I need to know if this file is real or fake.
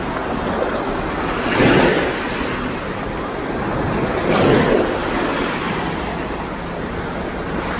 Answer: real